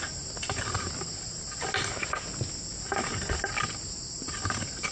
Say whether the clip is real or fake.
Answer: real